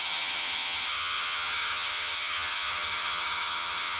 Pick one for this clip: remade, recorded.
remade